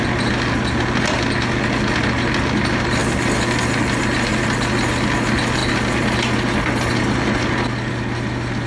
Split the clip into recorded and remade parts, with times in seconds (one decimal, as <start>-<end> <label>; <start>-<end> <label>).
0.0-8.7 recorded